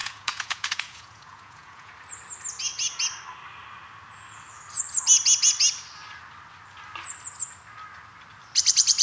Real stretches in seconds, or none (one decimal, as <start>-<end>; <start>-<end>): 1.9-9.0